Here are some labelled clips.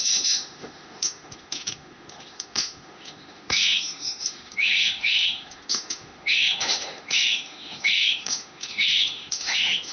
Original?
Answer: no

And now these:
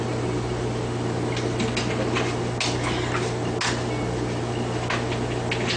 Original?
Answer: yes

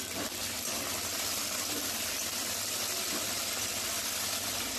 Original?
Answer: yes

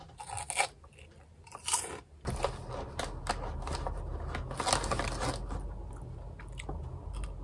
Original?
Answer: yes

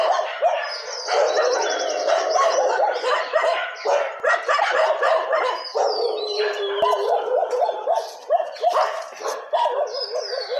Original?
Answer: no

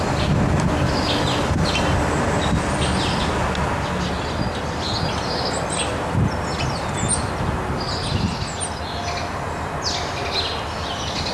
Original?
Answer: yes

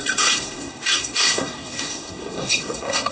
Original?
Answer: no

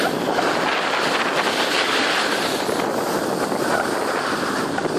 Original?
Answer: yes